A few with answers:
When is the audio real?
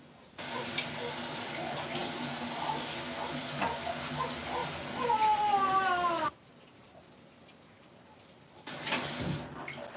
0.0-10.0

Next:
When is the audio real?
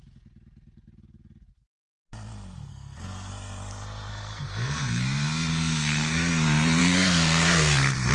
0.0-2.7; 3.3-4.1; 5.0-5.5; 6.3-6.8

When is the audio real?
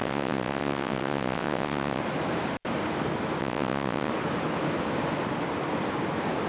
2.0-3.4; 4.1-6.5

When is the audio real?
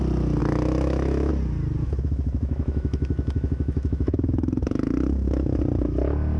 0.0-0.4; 1.3-1.8; 5.6-6.4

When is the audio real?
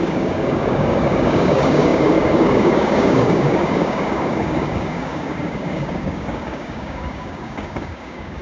none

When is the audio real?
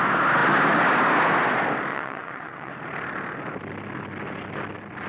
0.0-1.9; 2.7-5.1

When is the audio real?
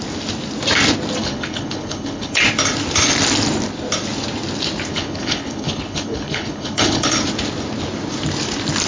0.0-1.2; 2.4-4.9; 7.2-8.9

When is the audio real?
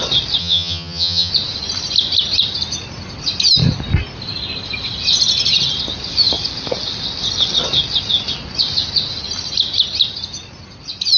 0.0-0.4; 1.3-11.2